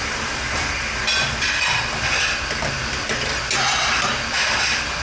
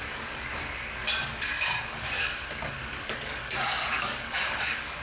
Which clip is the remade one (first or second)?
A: second